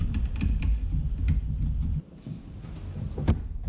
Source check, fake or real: real